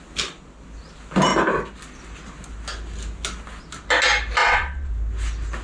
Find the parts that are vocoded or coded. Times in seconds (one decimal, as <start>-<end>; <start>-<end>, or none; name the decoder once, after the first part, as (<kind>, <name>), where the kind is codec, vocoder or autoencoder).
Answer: 4.4-4.9 (vocoder, WaveNeXt)